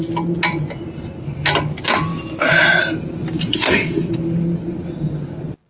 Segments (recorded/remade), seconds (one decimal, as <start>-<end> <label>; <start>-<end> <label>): 0.0-3.5 recorded; 3.5-4.1 remade; 4.1-5.7 recorded